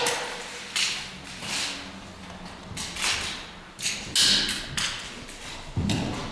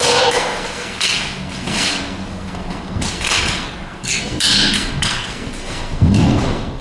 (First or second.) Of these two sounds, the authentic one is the first